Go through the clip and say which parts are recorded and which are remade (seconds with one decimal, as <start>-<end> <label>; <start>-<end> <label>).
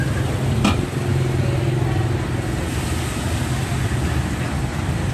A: 0.0-5.1 recorded